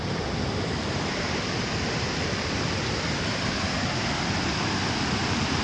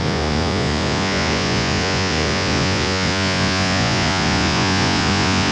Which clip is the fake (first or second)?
second